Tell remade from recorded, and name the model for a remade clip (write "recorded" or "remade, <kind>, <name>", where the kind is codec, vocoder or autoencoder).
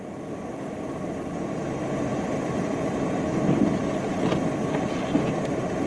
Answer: recorded